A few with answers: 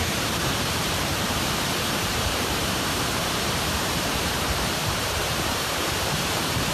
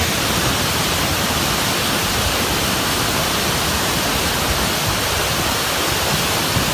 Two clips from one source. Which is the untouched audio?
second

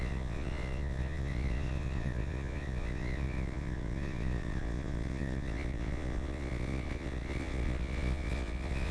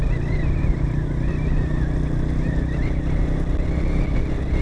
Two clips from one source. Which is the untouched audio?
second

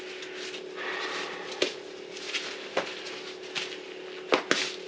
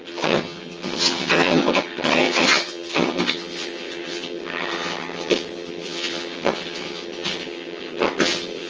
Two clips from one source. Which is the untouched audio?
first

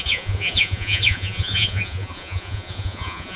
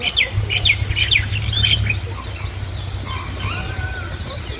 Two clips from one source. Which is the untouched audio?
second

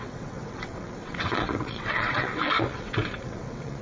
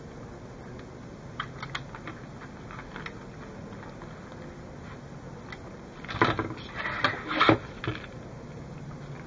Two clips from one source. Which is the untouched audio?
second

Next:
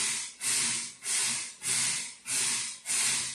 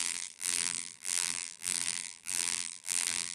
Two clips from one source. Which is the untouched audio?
first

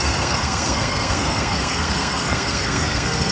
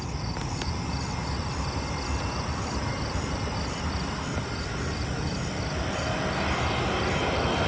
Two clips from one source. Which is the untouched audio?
second